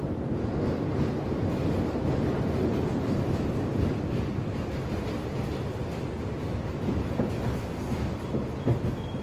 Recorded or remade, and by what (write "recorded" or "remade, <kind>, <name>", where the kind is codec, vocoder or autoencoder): recorded